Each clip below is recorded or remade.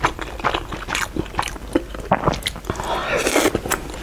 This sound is recorded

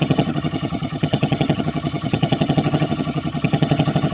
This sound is remade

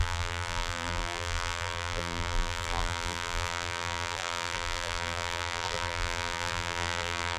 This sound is remade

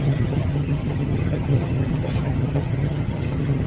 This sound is remade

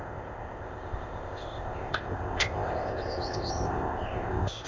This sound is remade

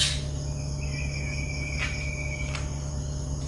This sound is recorded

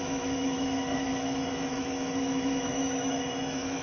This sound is remade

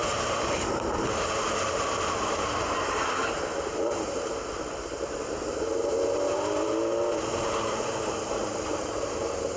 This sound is remade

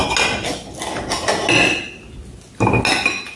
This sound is recorded